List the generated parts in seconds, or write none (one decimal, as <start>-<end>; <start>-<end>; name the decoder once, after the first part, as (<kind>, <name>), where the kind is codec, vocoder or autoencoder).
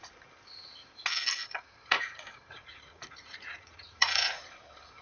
1.4-4.4 (vocoder, Vocos)